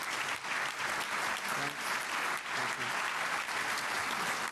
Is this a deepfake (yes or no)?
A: no